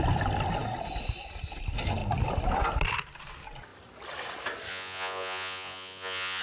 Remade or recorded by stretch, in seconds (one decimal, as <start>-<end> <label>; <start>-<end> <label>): 0.0-4.7 recorded; 4.7-6.4 remade